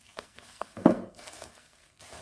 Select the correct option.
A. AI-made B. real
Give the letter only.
A